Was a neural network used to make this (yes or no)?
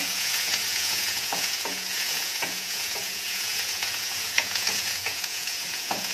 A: yes